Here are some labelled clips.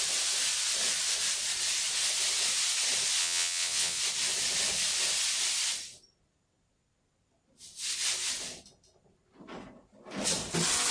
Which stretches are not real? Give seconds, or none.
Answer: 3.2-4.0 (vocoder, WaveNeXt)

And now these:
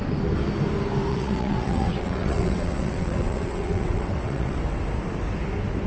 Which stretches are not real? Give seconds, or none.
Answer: 1.1-4.6 (vocoder, WaveNeXt)

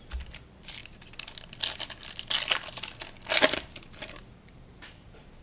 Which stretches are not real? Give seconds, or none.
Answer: 0.0-0.8 (vocoder, BigVGAN v2); 4.0-5.4

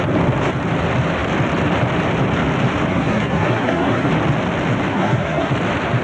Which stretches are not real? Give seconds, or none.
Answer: 2.9-4.1 (codec, SNAC); 4.9-5.5

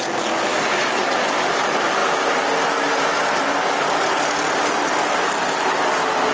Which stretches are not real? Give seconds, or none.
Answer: none

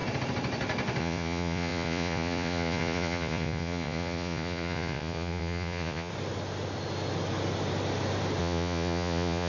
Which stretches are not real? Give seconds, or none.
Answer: 1.0-6.1 (vocoder, Vocos); 8.4-9.5